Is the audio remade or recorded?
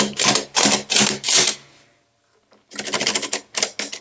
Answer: recorded